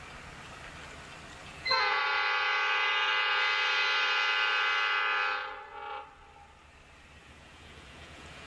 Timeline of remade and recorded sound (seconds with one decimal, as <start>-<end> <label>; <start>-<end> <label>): 0.0-1.4 recorded; 1.4-2.0 remade; 2.0-7.2 recorded; 7.2-8.5 remade